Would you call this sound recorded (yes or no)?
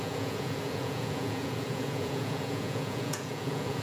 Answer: no